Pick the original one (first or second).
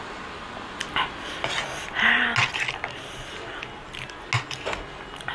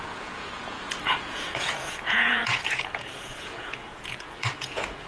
first